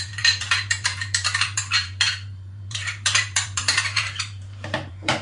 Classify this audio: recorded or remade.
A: remade